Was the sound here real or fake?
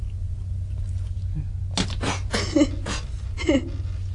real